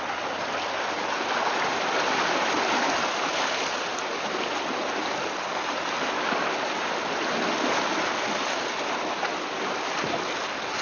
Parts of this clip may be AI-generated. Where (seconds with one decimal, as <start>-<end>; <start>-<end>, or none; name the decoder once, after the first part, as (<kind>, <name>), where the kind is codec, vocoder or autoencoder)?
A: none